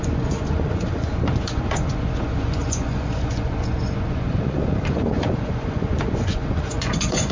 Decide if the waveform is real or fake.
fake